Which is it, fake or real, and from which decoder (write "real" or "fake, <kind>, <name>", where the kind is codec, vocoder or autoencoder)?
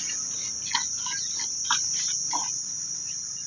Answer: real